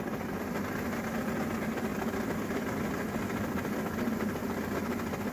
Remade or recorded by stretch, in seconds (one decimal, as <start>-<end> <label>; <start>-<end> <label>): 0.0-5.3 recorded